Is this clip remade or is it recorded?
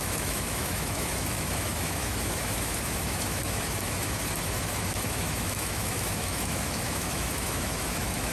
remade